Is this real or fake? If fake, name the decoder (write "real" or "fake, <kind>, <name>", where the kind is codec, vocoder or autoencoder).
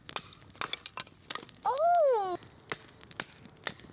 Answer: real